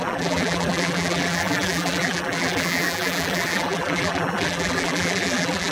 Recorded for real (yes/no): no